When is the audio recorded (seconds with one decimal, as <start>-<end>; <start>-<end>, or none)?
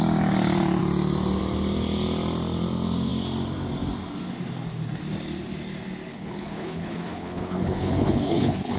0.0-6.1